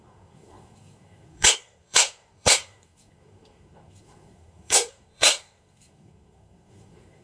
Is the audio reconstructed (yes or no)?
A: yes